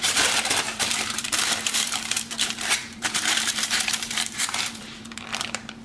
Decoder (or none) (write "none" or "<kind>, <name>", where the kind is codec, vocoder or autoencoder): vocoder, BigVGAN v2